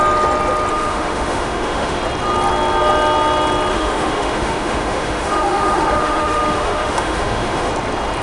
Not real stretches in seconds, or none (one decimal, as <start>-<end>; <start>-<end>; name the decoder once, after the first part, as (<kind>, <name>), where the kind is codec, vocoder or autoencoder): 0.7-2.0 (autoencoder, DAC-VAE); 3.7-7.7